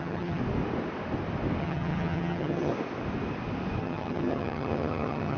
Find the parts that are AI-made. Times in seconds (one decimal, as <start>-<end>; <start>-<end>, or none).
0.0-0.4; 1.6-2.7; 3.8-5.4